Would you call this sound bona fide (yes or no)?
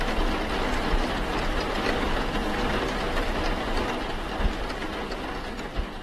yes